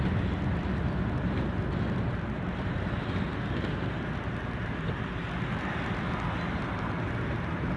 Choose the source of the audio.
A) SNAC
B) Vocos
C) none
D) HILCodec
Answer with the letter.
C